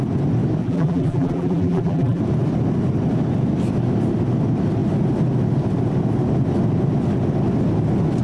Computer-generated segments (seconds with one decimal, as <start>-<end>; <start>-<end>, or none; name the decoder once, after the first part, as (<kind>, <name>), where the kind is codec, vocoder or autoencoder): 0.6-2.2 (vocoder, BigVGAN v2)